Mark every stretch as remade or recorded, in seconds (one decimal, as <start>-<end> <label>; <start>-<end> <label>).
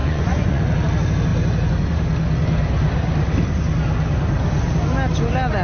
0.0-0.6 remade; 0.6-5.6 recorded